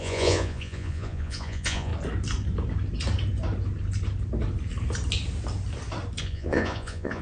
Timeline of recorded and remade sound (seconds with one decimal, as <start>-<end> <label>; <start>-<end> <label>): 0.0-1.9 remade; 1.9-6.2 recorded; 6.2-7.2 remade